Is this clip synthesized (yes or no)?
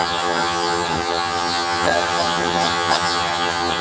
yes